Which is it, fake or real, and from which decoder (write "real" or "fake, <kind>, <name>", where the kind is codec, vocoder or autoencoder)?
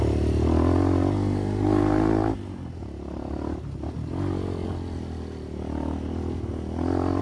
real